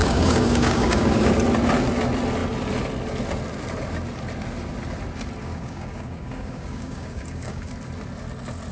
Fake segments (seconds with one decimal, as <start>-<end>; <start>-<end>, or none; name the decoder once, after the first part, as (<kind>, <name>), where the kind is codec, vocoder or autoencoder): 0.0-1.3 (codec, DAC); 5.4-7.7